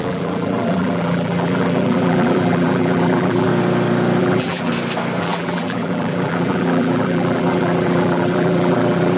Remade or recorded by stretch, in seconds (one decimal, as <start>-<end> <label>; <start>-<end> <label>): 0.0-3.5 remade; 3.5-4.2 recorded; 4.2-4.7 remade; 4.7-5.2 recorded; 5.2-9.2 remade